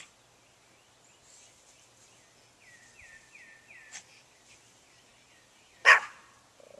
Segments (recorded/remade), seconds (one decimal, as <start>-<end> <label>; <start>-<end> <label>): 0.0-6.8 recorded